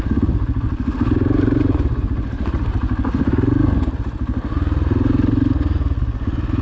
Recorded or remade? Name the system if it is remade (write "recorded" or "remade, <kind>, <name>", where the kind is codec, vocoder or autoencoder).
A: recorded